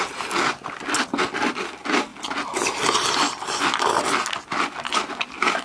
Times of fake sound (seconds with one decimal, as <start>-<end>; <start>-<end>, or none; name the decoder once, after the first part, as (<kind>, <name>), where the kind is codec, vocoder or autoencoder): none